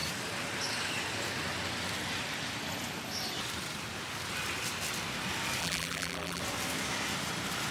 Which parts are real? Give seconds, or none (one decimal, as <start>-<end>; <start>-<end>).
0.0-5.6; 6.4-7.7